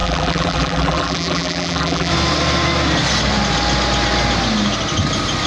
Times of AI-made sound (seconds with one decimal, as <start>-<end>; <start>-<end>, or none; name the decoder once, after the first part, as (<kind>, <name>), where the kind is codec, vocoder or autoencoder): 0.0-2.1 (vocoder, BigVGAN v2)